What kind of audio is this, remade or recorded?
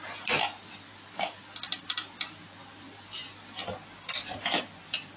recorded